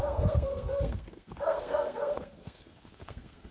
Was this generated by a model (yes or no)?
yes